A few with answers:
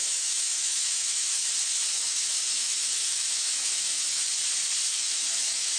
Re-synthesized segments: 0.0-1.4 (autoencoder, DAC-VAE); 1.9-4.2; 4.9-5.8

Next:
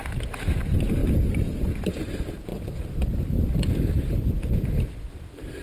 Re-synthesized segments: none

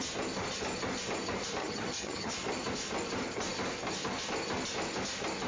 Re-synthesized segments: 1.6-2.3 (vocoder, HiFi-GAN)